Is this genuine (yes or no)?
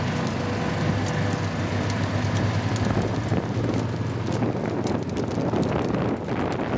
yes